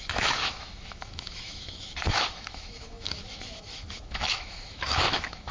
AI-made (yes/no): yes